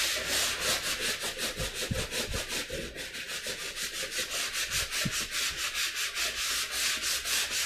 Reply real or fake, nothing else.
real